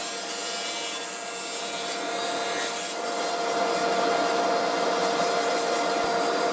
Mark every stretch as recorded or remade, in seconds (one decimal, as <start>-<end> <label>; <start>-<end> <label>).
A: 0.0-6.5 recorded